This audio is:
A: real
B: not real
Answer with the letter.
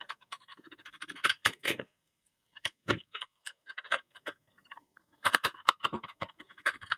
B